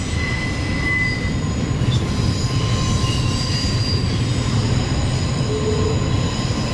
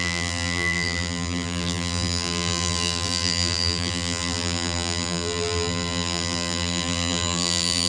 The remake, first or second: second